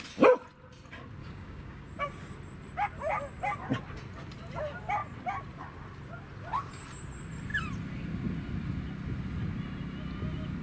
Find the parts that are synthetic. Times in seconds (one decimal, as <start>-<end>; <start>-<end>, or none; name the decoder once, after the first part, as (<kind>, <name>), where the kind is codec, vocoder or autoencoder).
1.2-1.8 (codec, DAC)